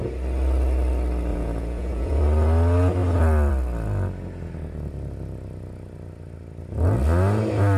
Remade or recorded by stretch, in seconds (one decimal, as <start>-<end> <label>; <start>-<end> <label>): 0.0-1.3 recorded; 1.3-2.2 remade; 2.2-7.8 recorded